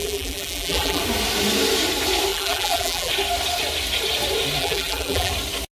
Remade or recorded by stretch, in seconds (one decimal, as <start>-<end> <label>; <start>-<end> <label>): 0.0-1.0 remade; 1.0-2.3 recorded; 2.3-3.1 remade; 3.1-4.6 recorded; 4.6-5.3 remade; 5.3-5.7 recorded